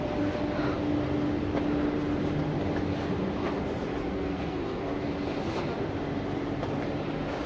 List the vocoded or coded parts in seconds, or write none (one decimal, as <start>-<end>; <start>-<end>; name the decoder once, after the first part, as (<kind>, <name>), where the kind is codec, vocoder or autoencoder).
4.0-4.9 (codec, SNAC)